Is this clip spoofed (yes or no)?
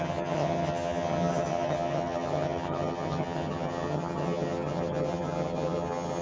yes